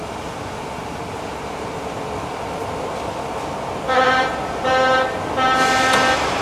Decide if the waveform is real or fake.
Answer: real